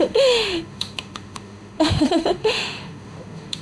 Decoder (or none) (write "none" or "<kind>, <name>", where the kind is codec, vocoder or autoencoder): autoencoder, DAC-VAE